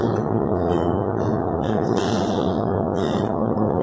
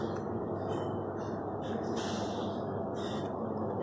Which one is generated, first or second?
first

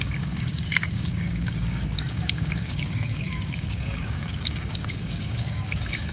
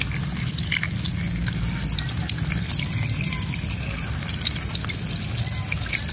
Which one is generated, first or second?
first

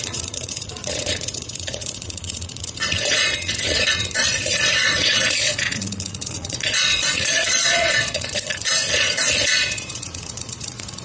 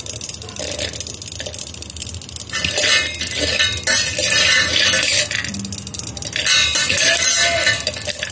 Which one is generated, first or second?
first